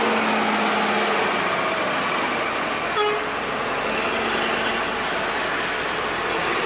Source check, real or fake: real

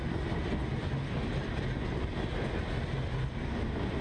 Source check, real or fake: real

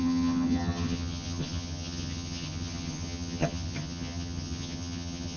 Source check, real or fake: fake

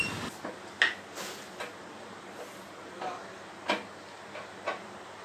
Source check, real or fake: real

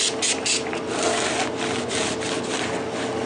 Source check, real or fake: real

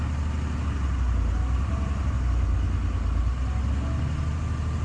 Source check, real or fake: real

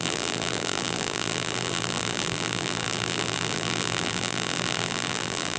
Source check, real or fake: fake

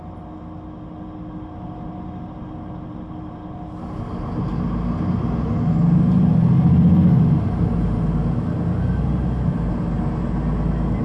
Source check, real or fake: real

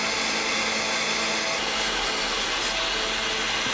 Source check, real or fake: real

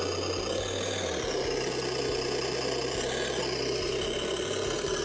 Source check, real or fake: real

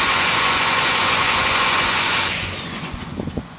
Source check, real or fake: fake